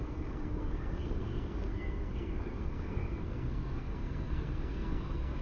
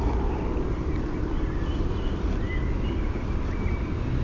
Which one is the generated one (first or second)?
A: first